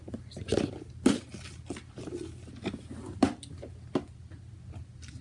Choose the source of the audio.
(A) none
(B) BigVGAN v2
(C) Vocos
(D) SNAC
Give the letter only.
A